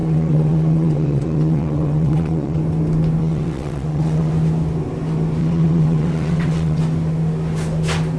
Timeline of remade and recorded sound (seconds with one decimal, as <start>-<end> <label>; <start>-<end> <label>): 0.0-2.6 remade; 2.6-3.2 recorded; 3.2-4.3 remade; 4.3-5.4 recorded; 5.4-6.8 remade; 6.8-8.2 recorded

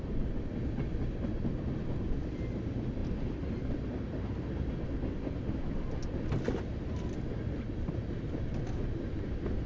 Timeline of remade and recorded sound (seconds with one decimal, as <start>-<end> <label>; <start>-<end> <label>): 0.0-9.7 recorded

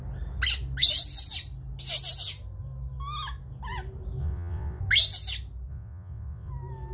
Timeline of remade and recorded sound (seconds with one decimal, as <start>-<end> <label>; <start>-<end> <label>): 0.0-4.2 recorded; 4.2-4.8 remade; 4.8-5.7 recorded; 5.7-6.5 remade; 6.5-6.9 recorded

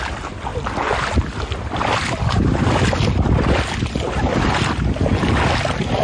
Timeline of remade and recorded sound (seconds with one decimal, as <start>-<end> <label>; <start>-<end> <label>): 0.0-6.0 recorded

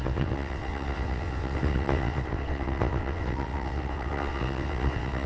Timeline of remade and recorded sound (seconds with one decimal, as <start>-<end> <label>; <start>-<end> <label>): 0.0-5.3 remade

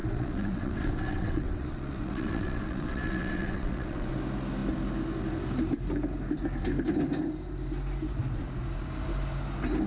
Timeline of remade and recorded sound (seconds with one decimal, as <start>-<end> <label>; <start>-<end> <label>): 0.0-4.1 remade; 4.1-9.9 recorded